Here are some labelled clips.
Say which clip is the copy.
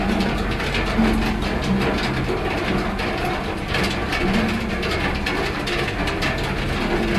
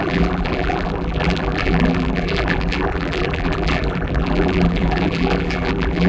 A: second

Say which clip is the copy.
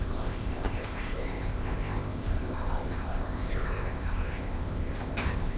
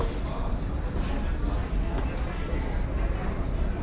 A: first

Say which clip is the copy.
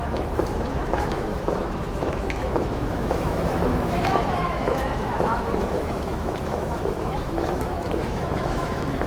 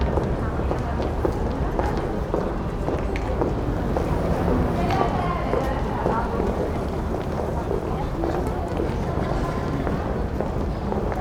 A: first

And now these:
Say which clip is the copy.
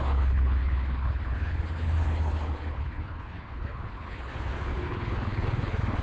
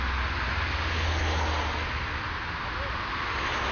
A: first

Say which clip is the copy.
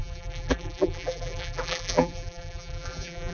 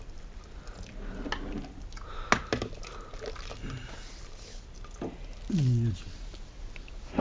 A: first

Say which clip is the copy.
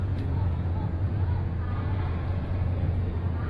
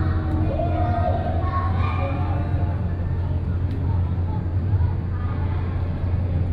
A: first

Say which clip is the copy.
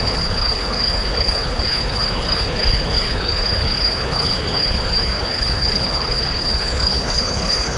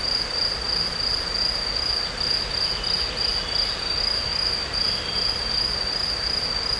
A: first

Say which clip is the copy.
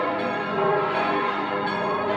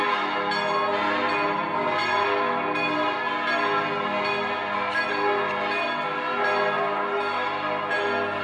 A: first